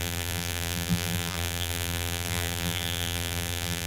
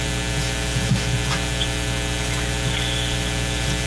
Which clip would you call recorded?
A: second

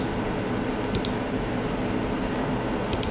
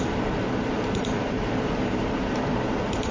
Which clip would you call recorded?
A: first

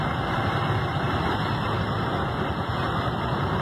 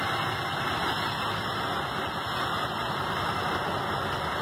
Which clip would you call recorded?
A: second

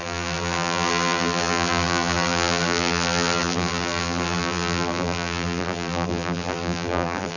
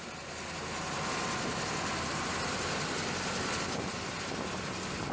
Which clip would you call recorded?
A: second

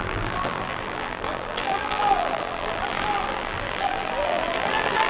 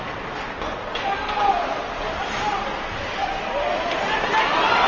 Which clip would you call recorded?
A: second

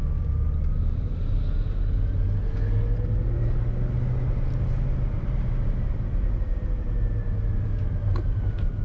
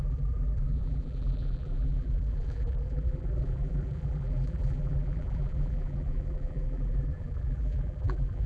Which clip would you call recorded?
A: first